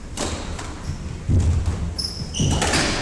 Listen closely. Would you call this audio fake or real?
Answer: real